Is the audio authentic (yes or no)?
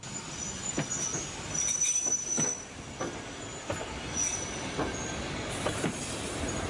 yes